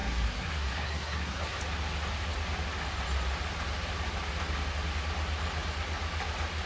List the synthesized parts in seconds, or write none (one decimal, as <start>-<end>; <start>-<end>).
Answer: 0.0-1.6